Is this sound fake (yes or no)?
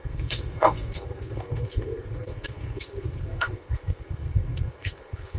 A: yes